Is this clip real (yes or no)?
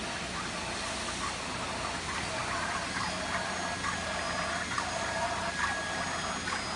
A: yes